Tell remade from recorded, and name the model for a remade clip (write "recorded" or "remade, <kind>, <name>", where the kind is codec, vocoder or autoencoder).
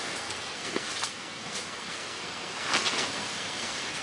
remade, codec, SNAC